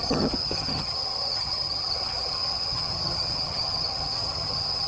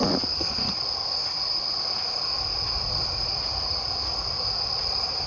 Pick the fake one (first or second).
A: first